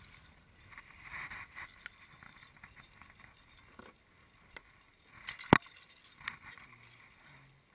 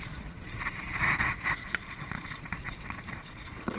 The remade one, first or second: second